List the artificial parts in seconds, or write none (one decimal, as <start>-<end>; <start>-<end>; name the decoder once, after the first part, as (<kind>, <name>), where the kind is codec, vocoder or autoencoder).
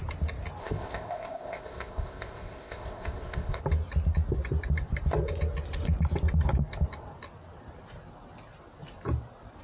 0.6-3.6 (codec, ZipCodec)